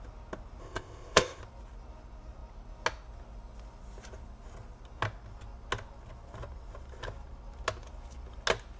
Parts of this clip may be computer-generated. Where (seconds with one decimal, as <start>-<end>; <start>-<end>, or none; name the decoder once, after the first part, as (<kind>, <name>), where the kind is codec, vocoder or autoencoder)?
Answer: 0.6-1.4 (codec, ZipCodec)